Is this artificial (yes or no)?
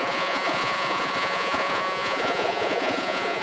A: yes